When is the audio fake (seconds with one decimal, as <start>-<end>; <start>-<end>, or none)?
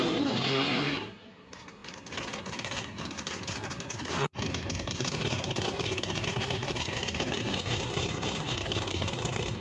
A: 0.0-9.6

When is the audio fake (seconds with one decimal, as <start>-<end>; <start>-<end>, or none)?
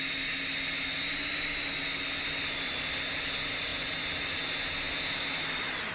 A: none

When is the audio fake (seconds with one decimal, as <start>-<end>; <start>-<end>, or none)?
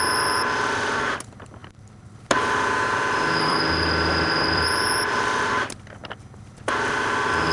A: 1.6-5.4; 6.0-6.6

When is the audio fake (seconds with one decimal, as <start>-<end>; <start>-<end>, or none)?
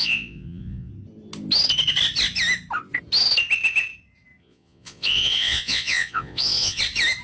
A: 0.0-0.9; 4.4-6.8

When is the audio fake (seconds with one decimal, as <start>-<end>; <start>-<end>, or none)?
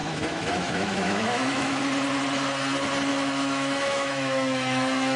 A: 0.0-1.8; 3.1-5.2